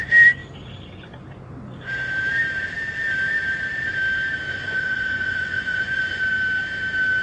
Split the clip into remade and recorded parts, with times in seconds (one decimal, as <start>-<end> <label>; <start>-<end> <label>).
0.0-4.5 recorded; 4.5-6.2 remade; 6.2-7.2 recorded